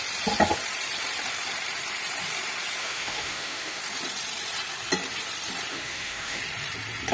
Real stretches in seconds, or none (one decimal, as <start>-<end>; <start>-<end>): 0.0-2.8; 3.8-5.7; 6.4-7.1

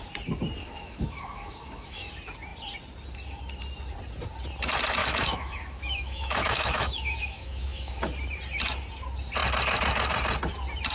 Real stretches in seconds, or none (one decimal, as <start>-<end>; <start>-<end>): 0.0-0.6; 2.1-5.0; 8.0-10.9

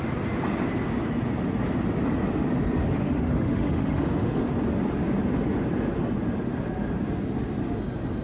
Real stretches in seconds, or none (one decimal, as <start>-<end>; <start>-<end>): 0.0-2.9; 4.4-8.2

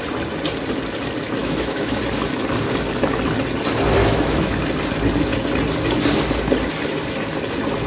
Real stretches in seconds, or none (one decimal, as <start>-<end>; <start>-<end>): 0.0-1.4; 2.0-4.0; 4.6-7.9

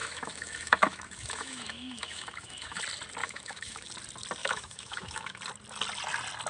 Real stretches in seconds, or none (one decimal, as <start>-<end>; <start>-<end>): 2.8-3.2; 3.9-4.4; 5.4-6.5

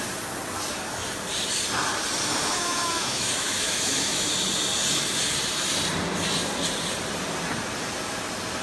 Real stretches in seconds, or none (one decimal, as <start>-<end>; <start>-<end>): 0.0-2.4; 4.3-8.6

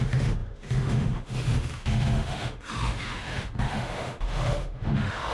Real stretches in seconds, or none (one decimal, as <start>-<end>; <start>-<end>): none

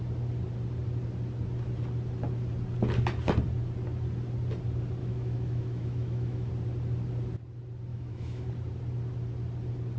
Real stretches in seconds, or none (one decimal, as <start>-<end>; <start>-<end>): 0.0-5.0; 6.5-7.9; 8.5-10.0